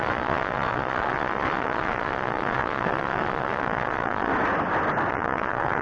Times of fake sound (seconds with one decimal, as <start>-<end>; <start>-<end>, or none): 0.0-4.3; 5.1-5.8